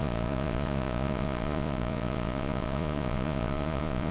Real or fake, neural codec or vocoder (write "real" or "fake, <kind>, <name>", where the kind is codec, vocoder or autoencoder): fake, vocoder, Vocos